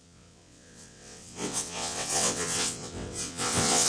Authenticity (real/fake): fake